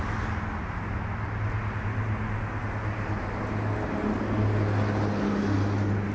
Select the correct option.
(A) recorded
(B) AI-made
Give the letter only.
A